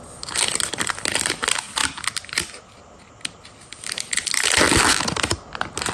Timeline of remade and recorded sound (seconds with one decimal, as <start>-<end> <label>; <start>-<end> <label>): 0.0-5.9 recorded